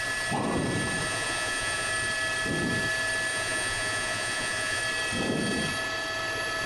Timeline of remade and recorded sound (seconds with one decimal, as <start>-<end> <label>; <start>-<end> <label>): 0.0-1.0 recorded; 1.0-1.9 remade; 1.9-3.3 recorded; 3.3-4.8 remade; 4.8-6.7 recorded